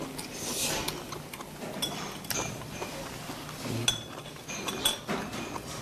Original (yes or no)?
yes